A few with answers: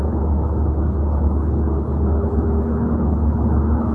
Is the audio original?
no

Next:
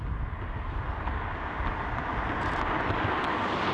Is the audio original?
yes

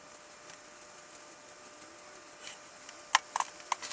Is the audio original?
yes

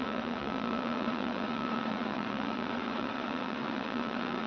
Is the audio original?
no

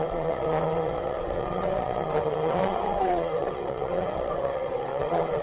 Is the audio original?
no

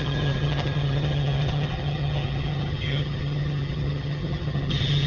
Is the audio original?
no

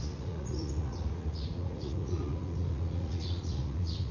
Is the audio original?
no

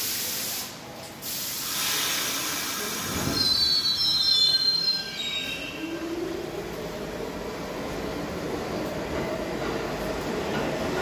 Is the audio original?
yes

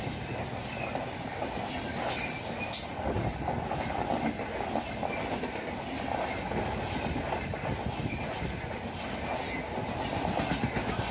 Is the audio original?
yes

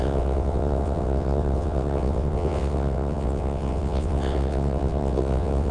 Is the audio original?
no